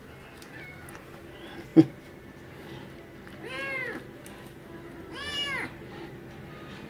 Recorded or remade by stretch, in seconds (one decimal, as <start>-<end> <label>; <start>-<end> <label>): 0.0-6.9 recorded